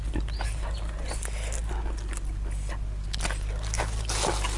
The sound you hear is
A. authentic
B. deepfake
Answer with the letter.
A